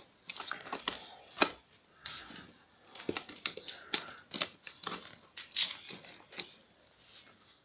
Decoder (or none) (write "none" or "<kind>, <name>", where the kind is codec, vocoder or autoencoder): none